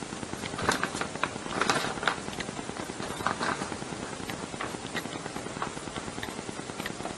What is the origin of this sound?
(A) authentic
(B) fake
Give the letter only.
B